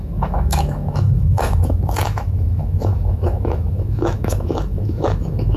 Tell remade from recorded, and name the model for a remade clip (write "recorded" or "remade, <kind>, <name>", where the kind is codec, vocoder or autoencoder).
remade, autoencoder, DAC-VAE